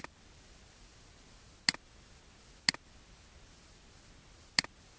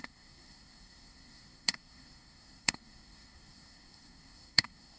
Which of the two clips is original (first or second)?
first